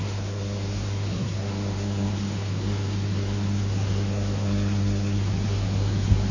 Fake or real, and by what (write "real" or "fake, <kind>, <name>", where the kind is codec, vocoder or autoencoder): fake, codec, SNAC